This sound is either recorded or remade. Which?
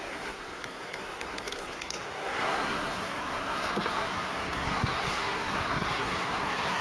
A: remade